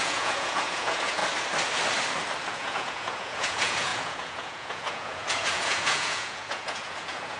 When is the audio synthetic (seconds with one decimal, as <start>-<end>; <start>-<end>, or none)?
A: 0.0-1.2; 2.5-7.4